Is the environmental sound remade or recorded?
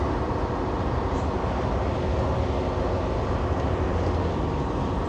recorded